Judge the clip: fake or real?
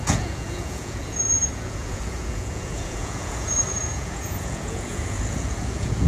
fake